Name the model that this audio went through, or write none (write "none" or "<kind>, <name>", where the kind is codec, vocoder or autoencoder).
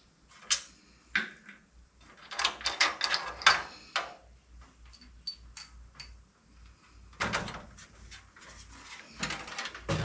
none